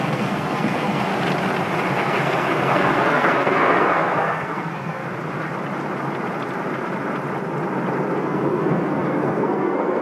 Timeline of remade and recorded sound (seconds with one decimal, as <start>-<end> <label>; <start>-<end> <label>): 0.0-1.1 remade; 1.1-1.9 recorded; 1.9-5.0 remade; 5.0-8.2 recorded; 8.2-10.0 remade